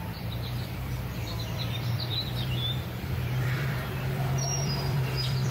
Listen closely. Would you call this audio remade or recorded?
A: remade